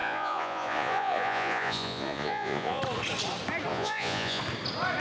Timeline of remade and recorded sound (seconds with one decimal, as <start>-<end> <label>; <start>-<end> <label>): 0.0-2.8 remade; 2.8-3.7 recorded; 3.7-4.4 remade; 4.4-5.0 recorded